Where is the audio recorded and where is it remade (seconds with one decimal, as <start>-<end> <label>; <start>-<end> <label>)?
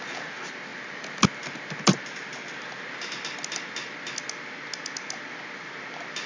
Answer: 0.0-6.3 recorded